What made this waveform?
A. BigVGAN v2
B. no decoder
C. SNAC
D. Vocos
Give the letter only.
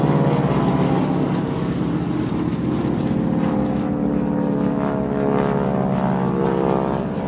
B